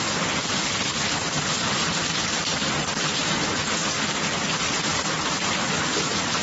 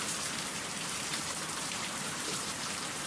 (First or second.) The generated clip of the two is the second